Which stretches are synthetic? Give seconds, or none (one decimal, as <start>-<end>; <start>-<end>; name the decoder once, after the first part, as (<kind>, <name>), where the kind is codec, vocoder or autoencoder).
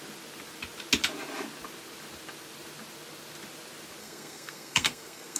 4.0-5.4 (codec, SNAC)